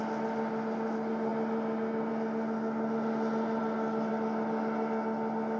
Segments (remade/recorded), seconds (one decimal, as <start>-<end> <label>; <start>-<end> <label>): 0.0-5.6 recorded